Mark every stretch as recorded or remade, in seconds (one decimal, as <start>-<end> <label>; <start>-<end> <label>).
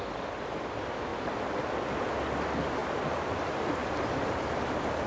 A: 0.0-1.1 recorded; 1.1-1.7 remade; 1.7-3.8 recorded; 3.8-4.5 remade; 4.5-5.1 recorded